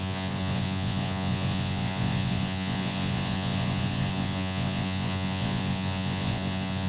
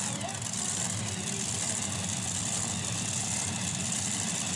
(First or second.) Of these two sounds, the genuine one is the second